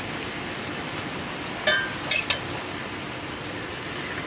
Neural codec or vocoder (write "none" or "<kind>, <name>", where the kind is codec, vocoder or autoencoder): none